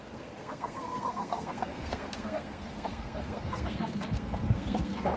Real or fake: fake